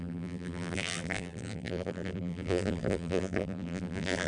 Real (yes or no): no